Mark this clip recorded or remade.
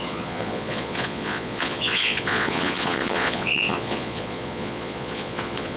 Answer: remade